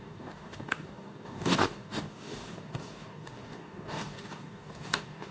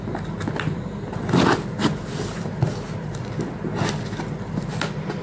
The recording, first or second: second